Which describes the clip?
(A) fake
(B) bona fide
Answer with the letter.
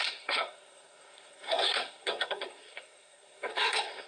A